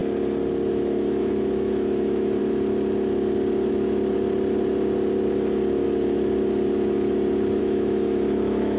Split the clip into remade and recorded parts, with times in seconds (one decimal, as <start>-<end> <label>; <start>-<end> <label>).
0.0-0.7 recorded; 0.7-2.4 remade; 2.4-7.6 recorded; 7.6-8.8 remade